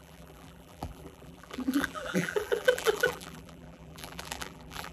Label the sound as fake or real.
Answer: fake